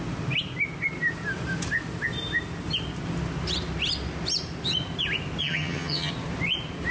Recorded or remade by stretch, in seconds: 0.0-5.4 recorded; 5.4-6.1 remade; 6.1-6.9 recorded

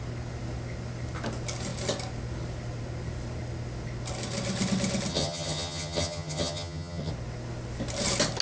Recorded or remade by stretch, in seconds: 0.0-5.1 recorded; 5.1-7.1 remade; 7.1-8.4 recorded

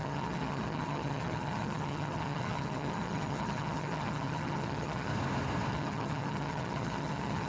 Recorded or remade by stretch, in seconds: 0.0-5.1 remade; 5.1-5.7 recorded; 5.7-7.5 remade